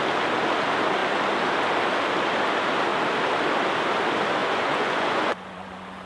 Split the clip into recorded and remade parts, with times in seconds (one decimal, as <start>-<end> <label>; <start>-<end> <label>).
0.0-4.4 recorded; 4.4-6.1 remade